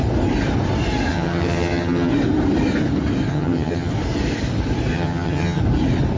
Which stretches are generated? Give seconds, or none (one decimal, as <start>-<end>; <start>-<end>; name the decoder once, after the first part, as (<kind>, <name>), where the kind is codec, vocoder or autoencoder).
1.1-2.1 (vocoder, HiFi-GAN); 3.3-3.9; 4.9-5.6